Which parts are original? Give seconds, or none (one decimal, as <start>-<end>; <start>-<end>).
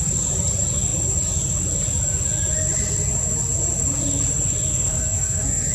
0.0-4.7